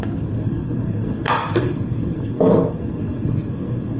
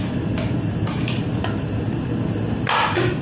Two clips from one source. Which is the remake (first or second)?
first